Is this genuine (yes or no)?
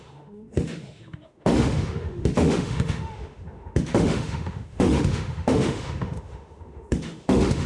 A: no